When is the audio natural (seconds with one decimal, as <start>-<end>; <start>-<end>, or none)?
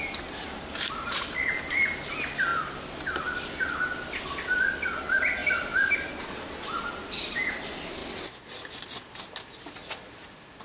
0.0-10.6